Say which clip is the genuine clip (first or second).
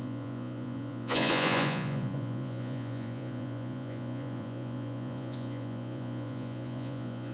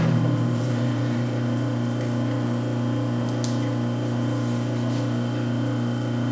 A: second